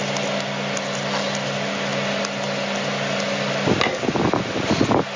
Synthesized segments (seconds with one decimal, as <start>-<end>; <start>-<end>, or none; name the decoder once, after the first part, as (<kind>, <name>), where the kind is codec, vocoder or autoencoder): none